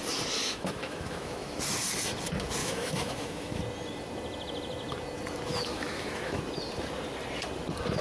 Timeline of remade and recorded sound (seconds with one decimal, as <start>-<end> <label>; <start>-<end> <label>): 0.0-0.4 recorded; 0.4-1.6 remade; 1.6-2.6 recorded; 2.6-3.6 remade; 3.6-5.5 recorded; 5.5-6.4 remade; 6.4-8.0 recorded